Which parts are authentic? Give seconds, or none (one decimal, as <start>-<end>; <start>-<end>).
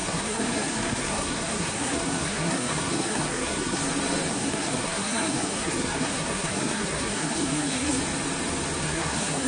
3.8-4.3; 8.0-8.8